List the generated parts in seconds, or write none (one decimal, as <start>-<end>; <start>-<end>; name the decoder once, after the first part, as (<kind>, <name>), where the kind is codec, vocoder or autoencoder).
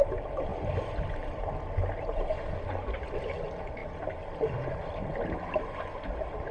none